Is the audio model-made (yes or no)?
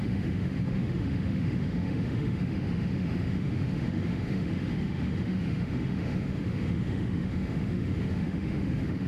yes